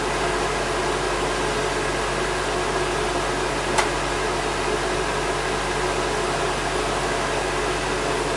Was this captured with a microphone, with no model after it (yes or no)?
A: yes